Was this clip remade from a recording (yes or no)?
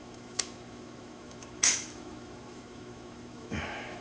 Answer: yes